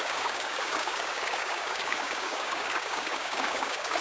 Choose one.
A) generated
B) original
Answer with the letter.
A